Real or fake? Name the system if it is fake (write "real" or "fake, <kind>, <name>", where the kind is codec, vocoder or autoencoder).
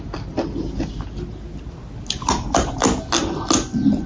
real